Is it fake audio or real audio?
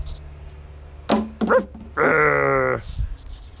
real